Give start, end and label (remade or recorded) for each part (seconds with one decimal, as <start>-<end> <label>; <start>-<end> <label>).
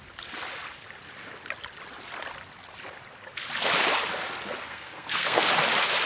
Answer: 0.0-4.6 recorded; 4.6-5.5 remade; 5.5-6.1 recorded